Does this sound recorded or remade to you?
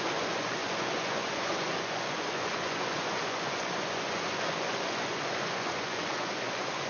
remade